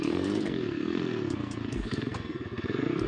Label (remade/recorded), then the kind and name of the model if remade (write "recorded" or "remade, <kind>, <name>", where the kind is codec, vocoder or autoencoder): remade, codec, SNAC